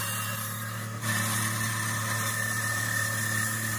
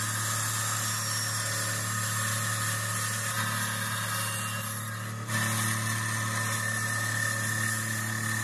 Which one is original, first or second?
second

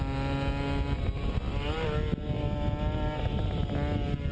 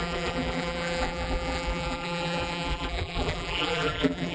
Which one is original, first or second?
first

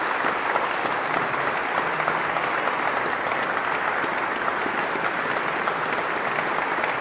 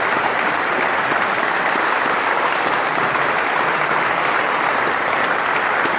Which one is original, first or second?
first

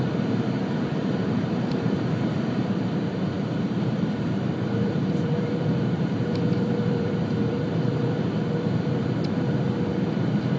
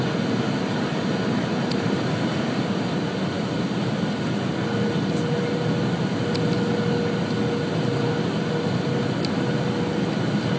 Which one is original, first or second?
second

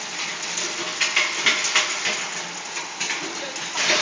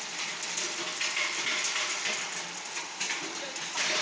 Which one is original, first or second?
first